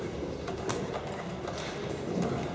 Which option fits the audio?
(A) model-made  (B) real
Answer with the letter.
B